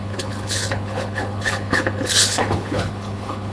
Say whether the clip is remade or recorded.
remade